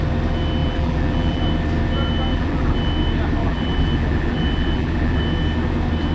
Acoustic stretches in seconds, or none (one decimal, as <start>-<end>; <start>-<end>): 0.0-0.6; 1.4-2.3; 2.9-3.4; 5.2-6.1